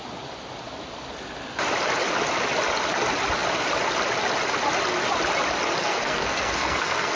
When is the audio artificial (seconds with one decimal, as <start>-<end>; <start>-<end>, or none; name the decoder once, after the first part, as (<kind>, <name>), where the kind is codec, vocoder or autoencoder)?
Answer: 5.8-7.2 (codec, SNAC)